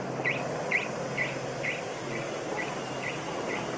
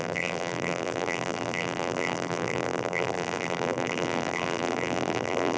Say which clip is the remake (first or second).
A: second